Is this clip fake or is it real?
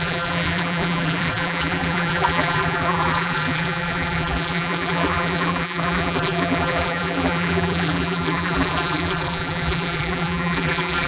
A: fake